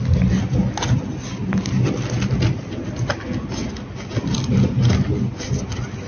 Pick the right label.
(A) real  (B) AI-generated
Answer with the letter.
A